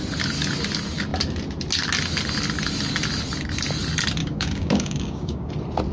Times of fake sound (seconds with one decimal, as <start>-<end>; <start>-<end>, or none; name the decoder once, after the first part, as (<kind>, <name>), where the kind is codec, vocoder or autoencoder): 4.2-5.5 (codec, DAC)